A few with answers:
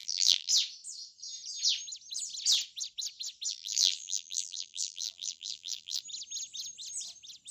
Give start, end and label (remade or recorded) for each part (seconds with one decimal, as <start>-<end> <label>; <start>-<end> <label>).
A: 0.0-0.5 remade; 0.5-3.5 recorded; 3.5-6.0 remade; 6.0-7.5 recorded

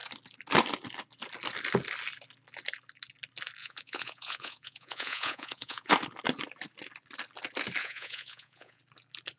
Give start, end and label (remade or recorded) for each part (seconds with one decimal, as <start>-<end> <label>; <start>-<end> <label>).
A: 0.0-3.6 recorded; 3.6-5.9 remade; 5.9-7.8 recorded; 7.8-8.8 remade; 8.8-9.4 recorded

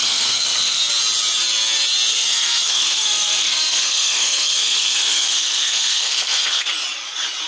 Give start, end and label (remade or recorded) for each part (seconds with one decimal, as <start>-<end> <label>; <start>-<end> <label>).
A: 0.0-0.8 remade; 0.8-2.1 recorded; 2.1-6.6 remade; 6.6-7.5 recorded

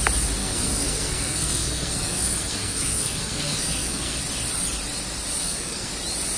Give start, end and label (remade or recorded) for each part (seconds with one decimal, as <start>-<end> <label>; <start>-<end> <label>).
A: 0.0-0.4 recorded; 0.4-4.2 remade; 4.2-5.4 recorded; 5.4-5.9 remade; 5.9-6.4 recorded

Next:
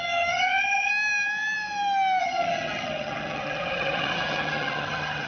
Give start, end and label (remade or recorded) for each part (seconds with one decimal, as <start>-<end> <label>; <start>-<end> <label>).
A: 0.0-0.9 remade; 0.9-2.2 recorded; 2.2-5.3 remade

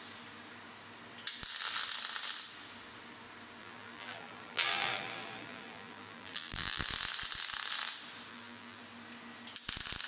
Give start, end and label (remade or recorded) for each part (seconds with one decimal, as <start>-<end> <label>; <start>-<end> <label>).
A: 0.0-3.6 recorded; 3.6-6.8 remade; 6.8-8.3 recorded; 8.3-8.8 remade; 8.8-10.1 recorded

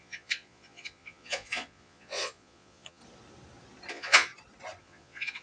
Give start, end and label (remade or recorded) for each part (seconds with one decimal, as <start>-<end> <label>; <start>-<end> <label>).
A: 0.0-3.0 remade; 3.0-3.9 recorded; 3.9-4.3 remade; 4.3-4.8 recorded; 4.8-5.4 remade